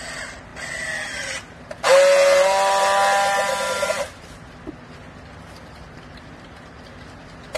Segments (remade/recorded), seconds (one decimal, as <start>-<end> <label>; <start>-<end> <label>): 0.0-7.6 recorded